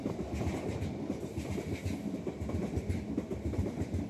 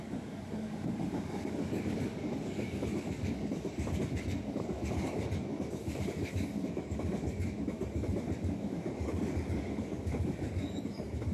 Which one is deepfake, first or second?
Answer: second